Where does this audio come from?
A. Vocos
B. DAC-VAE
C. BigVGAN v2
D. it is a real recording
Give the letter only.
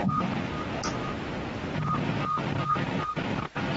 D